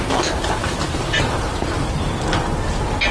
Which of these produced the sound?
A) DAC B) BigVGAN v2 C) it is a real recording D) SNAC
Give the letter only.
C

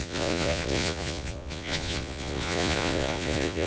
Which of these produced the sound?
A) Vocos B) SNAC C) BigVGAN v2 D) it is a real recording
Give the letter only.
A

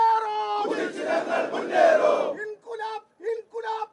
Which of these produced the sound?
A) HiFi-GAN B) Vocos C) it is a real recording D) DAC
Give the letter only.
C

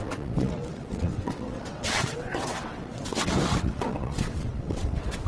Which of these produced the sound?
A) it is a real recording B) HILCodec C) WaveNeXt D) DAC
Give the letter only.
C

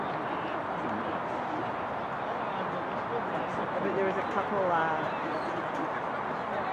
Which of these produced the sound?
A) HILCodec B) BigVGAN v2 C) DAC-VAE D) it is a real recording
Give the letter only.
D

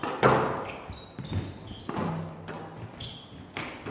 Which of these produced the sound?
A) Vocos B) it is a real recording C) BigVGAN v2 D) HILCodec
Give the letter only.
B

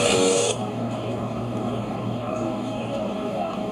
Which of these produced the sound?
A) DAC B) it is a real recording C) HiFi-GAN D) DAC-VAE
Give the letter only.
A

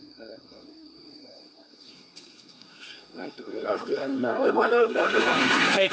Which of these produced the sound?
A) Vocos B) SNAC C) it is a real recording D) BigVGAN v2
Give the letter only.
B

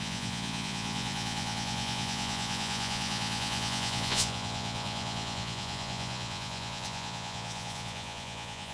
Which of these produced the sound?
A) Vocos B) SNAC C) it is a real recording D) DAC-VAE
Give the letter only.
A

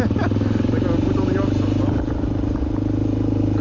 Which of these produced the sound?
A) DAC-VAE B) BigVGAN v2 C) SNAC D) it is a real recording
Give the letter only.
D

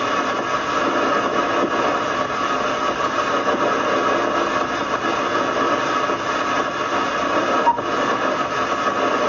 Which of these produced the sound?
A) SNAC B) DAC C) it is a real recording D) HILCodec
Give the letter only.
C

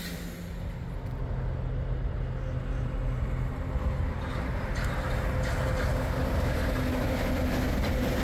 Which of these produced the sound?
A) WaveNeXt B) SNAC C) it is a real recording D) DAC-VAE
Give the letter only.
C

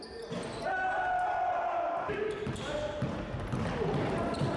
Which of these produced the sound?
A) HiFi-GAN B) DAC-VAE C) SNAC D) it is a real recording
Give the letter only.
D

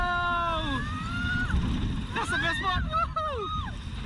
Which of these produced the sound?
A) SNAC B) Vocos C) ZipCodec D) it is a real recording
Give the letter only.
D